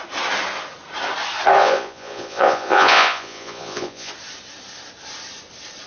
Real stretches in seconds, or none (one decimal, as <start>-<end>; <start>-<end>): 0.0-1.6; 4.1-5.9